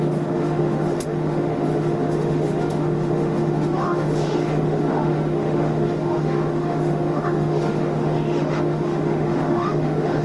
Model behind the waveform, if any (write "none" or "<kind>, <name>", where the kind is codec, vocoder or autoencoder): autoencoder, DAC-VAE